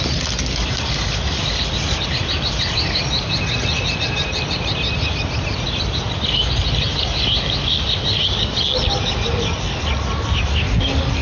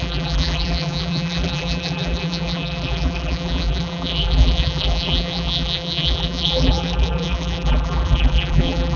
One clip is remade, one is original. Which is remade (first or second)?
second